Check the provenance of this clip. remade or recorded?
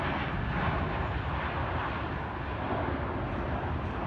recorded